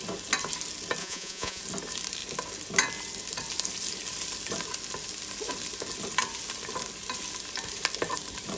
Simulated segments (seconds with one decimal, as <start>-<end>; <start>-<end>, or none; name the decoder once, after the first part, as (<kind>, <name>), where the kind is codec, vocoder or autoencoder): 1.0-1.6 (vocoder, Vocos)